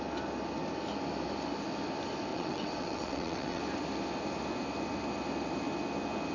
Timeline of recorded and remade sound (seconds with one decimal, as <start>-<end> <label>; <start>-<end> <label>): 0.0-2.3 recorded; 2.3-3.6 remade; 3.6-6.3 recorded